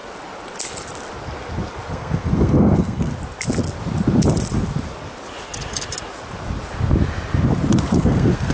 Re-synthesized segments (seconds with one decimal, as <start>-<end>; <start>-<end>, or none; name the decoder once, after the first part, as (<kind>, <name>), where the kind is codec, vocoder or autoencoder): 1.9-3.1 (codec, SNAC); 7.9-8.5